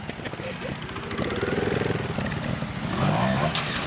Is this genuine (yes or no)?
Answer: yes